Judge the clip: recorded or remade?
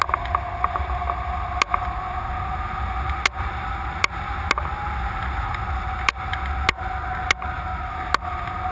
recorded